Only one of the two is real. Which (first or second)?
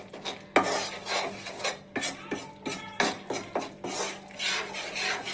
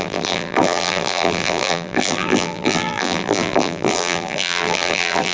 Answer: first